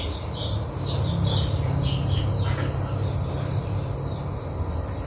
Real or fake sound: real